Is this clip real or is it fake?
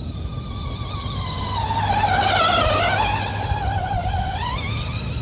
real